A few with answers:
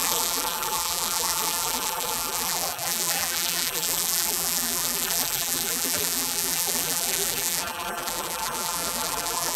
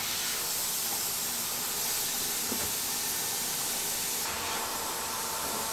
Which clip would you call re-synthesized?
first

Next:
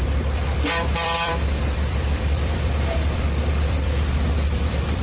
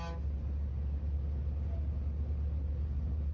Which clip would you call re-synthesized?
first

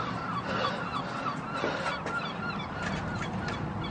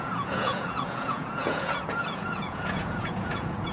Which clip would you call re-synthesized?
second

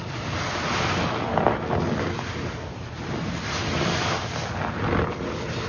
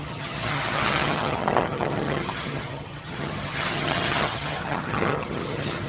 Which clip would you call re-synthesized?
second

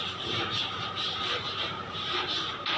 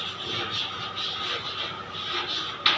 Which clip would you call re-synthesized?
first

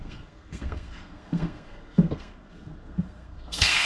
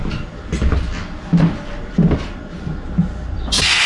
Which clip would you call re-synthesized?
first